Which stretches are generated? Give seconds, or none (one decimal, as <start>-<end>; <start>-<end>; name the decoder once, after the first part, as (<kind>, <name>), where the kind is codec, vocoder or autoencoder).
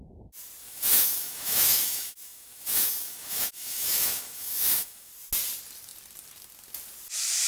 0.6-5.1 (autoencoder, DAC-VAE)